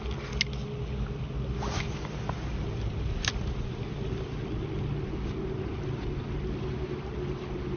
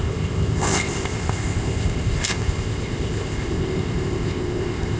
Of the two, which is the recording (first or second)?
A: first